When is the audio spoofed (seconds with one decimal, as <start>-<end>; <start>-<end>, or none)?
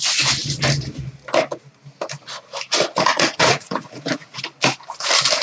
3.1-4.4